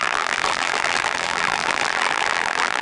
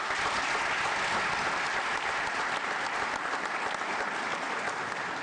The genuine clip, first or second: second